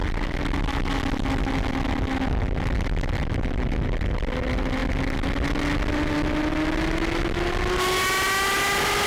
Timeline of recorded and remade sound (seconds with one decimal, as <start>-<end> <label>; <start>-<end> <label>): 0.0-9.1 recorded